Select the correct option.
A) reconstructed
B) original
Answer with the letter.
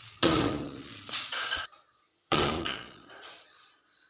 A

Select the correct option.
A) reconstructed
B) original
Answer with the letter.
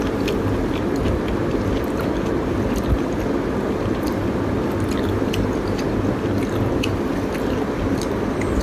B